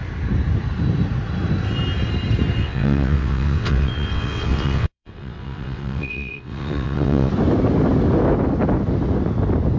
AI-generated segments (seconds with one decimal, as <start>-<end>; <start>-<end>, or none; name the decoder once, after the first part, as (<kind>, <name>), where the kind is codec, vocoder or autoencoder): 2.6-7.3 (vocoder, WaveNeXt)